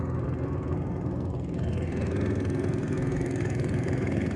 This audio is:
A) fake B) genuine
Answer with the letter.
A